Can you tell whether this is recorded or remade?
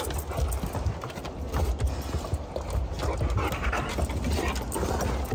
recorded